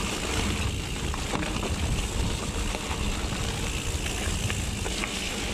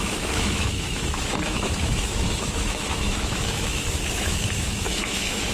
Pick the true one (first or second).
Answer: first